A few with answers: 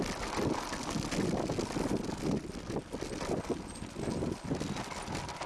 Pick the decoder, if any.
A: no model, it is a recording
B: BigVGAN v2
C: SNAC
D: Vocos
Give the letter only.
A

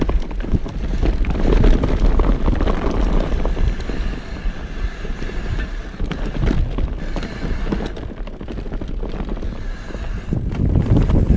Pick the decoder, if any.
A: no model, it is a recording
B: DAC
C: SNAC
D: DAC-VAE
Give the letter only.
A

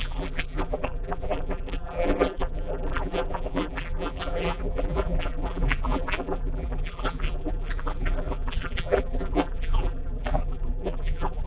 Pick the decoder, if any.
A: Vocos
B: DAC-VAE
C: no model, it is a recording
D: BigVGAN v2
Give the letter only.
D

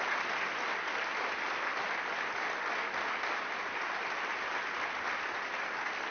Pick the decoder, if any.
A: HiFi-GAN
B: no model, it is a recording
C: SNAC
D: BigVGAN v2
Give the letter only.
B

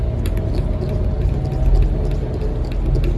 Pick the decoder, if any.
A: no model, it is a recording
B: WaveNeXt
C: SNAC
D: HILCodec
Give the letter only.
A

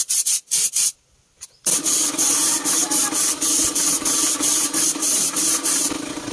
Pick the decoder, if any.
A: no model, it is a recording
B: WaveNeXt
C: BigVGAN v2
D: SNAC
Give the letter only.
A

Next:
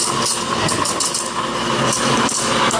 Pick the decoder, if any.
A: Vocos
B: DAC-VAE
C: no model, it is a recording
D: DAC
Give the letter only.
C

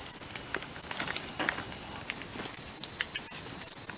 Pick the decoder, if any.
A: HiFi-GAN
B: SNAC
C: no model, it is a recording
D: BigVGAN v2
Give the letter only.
C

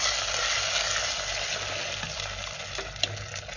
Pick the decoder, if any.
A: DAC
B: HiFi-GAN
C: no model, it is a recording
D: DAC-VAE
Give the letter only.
C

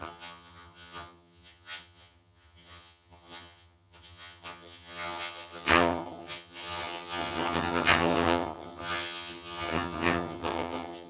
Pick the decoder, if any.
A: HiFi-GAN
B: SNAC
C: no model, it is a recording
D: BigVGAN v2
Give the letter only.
A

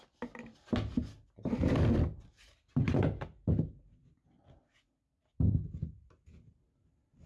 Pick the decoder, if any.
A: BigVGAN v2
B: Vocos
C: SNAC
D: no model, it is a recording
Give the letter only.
D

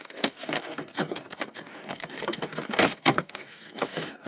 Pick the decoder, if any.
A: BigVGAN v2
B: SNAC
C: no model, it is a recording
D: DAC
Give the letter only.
D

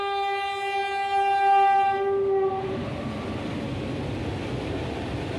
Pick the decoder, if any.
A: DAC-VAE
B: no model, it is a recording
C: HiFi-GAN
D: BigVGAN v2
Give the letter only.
B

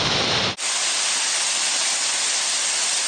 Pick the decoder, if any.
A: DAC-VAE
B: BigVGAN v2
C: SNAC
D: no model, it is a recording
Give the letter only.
D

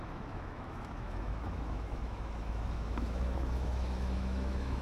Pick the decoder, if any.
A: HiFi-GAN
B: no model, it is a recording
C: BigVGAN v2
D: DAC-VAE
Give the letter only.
D